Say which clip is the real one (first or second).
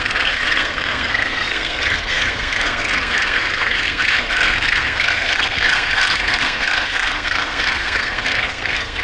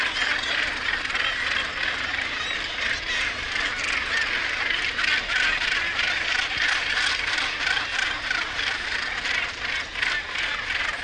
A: second